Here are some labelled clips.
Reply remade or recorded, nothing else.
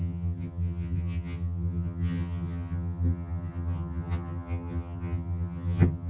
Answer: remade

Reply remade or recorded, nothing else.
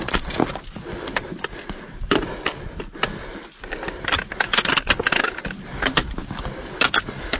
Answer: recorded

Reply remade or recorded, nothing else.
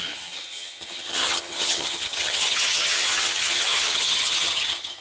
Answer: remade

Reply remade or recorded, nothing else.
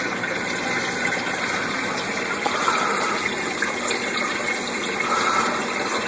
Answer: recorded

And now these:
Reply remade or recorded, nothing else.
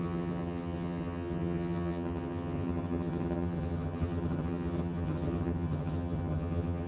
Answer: remade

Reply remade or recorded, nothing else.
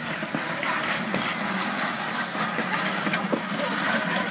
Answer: recorded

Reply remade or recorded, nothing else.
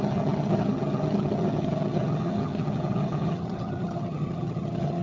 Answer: remade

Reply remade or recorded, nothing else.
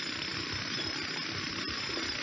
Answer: recorded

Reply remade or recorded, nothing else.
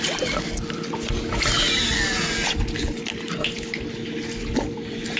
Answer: recorded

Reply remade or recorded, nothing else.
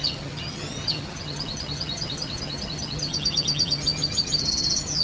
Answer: remade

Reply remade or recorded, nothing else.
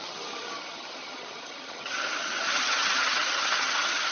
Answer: remade